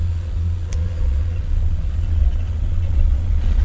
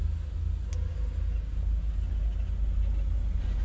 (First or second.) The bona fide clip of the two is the second